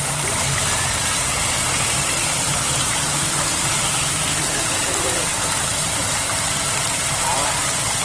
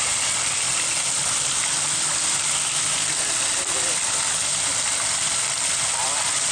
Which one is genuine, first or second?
second